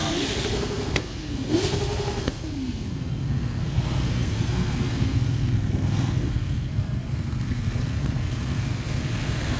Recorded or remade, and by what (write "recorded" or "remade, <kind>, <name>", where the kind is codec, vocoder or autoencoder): remade, codec, SNAC